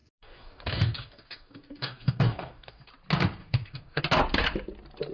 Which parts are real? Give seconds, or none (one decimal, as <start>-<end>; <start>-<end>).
2.9-3.4; 4.0-5.1